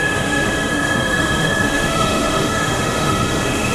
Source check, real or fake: fake